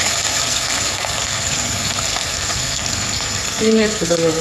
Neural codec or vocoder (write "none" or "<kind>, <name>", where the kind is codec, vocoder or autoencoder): codec, SNAC